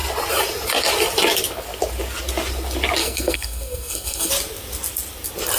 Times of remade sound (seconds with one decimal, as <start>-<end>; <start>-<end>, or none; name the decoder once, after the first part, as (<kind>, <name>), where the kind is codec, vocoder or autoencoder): 3.0-4.3 (codec, SNAC)